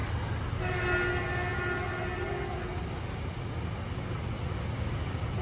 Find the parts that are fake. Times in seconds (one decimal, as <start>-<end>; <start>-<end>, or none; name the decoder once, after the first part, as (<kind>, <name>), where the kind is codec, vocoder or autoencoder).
none